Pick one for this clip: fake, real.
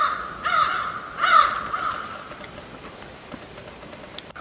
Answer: real